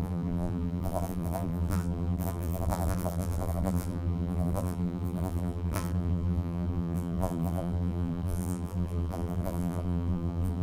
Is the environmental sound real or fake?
fake